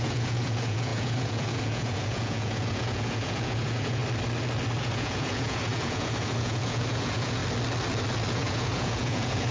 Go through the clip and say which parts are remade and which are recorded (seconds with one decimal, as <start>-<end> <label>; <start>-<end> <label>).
0.0-4.0 remade; 4.0-4.8 recorded; 4.8-7.4 remade; 7.4-8.3 recorded; 8.3-9.5 remade

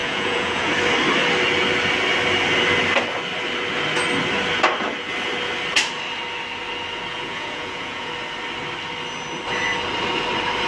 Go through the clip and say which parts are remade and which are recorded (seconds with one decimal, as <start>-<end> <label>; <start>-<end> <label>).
0.0-0.7 remade; 0.7-7.1 recorded; 7.1-8.1 remade; 8.1-10.7 recorded

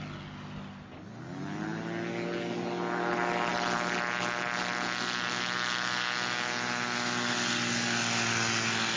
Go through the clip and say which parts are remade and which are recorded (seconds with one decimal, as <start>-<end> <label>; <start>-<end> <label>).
0.0-9.0 recorded